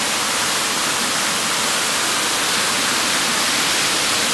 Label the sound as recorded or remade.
recorded